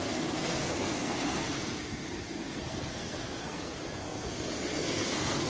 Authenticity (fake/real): fake